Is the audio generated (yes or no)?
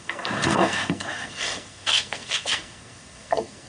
yes